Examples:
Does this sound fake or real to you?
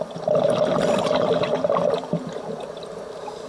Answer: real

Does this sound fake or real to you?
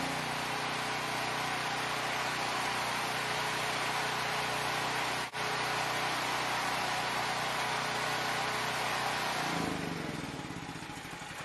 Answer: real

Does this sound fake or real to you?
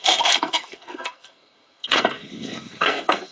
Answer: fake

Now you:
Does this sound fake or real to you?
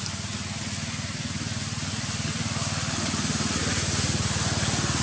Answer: real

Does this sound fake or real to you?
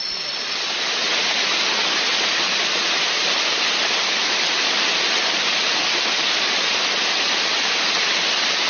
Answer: real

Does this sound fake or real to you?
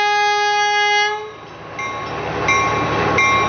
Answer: real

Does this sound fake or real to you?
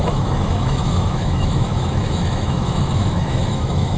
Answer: fake